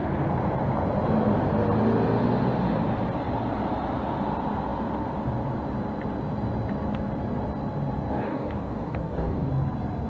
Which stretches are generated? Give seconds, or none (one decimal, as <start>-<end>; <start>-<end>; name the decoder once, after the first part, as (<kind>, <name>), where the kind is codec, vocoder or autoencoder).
8.1-9.5 (codec, DAC)